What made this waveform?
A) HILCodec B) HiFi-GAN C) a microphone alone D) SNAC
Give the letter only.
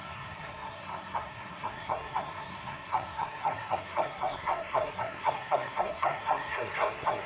D